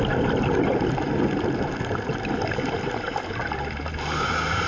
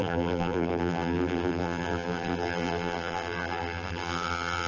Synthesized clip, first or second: second